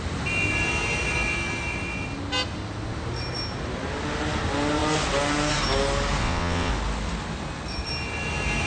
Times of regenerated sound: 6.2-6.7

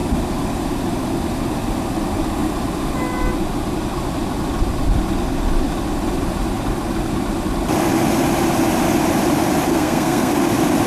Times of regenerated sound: 9.7-10.3

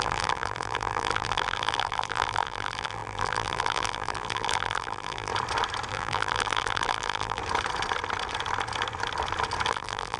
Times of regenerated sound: 0.0-5.3; 5.9-7.4; 9.7-10.2

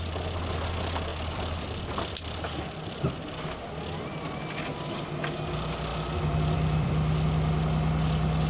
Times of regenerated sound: 1.1-2.8; 5.9-6.9